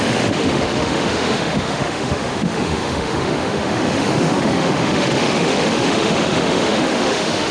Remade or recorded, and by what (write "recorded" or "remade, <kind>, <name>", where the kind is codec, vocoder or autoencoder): remade, autoencoder, DAC-VAE